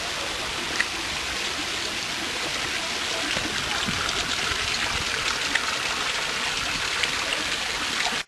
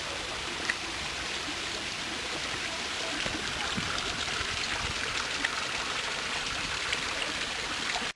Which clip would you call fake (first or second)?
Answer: second